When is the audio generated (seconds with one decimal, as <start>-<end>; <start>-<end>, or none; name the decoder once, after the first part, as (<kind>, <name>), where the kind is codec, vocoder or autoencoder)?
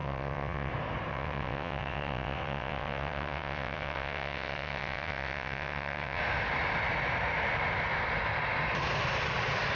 0.0-0.7 (vocoder, WaveNeXt); 1.1-6.2